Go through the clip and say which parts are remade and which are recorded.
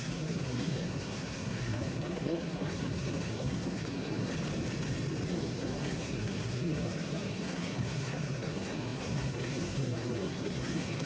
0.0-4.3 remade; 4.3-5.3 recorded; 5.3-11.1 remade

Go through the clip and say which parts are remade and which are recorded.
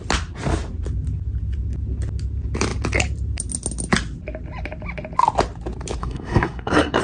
0.0-6.0 recorded; 6.0-7.0 remade